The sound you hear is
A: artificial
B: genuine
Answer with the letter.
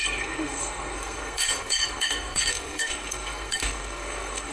A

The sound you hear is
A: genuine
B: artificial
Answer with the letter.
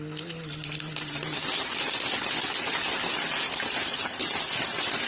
A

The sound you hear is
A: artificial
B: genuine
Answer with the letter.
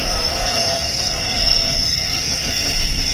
A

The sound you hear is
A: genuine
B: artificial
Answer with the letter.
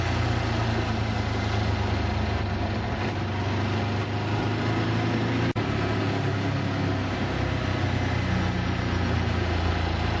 A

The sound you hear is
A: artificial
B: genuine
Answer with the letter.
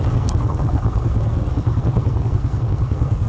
A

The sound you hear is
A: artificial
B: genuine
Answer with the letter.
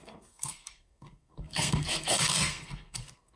A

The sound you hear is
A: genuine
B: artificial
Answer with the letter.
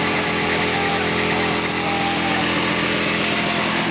A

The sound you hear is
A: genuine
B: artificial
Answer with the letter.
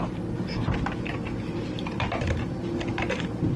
A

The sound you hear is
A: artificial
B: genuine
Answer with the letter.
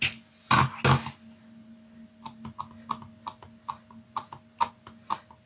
B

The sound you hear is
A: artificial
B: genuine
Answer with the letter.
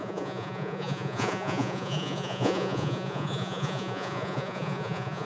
A